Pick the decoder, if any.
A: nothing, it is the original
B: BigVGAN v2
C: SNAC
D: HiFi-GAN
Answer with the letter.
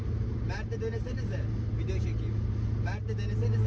A